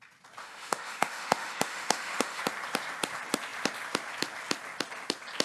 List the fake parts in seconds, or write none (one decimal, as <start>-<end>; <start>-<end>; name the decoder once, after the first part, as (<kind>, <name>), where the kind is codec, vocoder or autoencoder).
0.4-2.4 (autoencoder, DAC-VAE)